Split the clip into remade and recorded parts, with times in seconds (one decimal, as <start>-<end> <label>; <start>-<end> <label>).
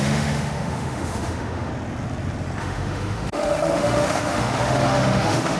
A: 0.0-1.7 remade; 1.7-2.6 recorded; 2.6-5.6 remade